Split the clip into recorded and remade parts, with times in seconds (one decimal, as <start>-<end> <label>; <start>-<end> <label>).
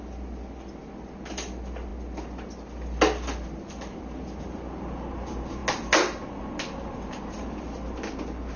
0.0-8.6 recorded